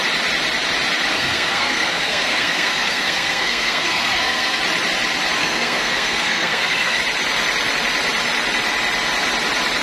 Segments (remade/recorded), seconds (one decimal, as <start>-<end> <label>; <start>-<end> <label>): 0.0-1.1 recorded; 1.1-4.6 remade; 4.6-5.4 recorded; 5.4-7.0 remade; 7.0-9.8 recorded